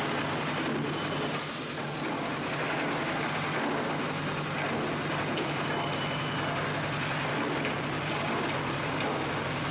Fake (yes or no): no